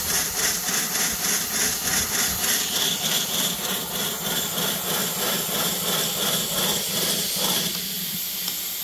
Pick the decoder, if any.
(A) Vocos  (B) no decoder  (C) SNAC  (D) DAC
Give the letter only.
B